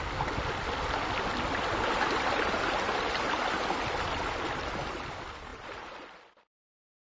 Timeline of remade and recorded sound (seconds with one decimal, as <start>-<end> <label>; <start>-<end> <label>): 0.0-7.0 recorded